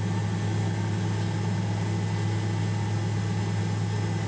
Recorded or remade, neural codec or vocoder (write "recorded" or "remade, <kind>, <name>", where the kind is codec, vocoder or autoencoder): recorded